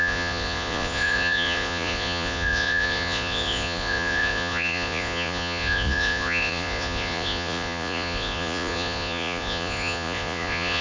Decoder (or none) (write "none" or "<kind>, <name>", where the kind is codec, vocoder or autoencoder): vocoder, Vocos